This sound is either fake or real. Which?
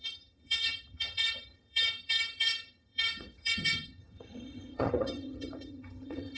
fake